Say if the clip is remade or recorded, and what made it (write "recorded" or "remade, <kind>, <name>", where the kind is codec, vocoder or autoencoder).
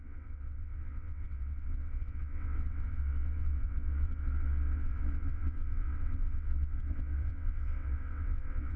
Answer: remade, vocoder, WaveNeXt